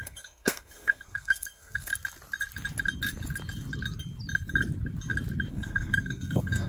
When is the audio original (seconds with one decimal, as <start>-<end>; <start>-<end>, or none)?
1.9-5.5